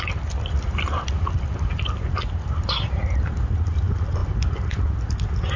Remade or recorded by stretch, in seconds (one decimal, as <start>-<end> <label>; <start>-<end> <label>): 0.0-5.6 recorded